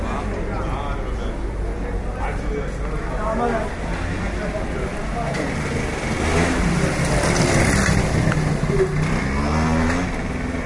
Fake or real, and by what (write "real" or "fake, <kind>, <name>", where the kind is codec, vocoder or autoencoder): real